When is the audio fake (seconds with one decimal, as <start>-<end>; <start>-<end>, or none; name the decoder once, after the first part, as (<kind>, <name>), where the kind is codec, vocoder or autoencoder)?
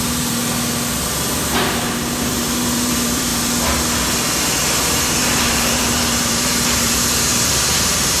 0.0-0.4 (vocoder, BigVGAN v2); 1.8-3.3; 5.2-8.2